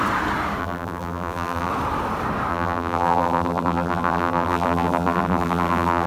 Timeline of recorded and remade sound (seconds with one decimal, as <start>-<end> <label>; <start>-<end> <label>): 0.0-0.6 recorded; 0.6-1.7 remade; 1.7-2.5 recorded; 2.5-6.1 remade